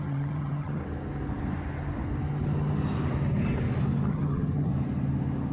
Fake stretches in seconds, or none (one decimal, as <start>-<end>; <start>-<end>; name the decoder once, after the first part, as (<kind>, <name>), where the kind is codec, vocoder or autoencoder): 0.0-0.8 (vocoder, HiFi-GAN); 4.1-4.7